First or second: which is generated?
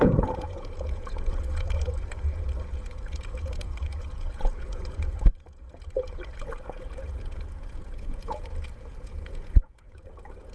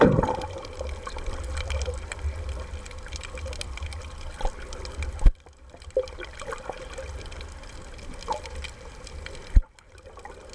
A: first